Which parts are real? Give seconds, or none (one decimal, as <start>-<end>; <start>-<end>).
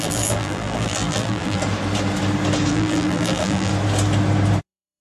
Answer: 1.6-2.7; 3.7-4.6